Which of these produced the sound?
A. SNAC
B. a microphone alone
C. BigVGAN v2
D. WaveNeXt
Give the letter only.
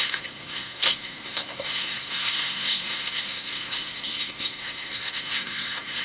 A